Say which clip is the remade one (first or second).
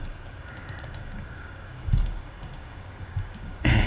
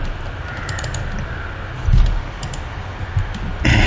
first